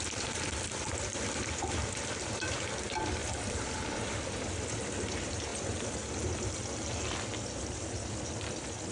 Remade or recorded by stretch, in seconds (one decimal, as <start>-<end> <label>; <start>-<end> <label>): 0.0-5.5 remade; 5.5-7.4 recorded; 7.4-8.9 remade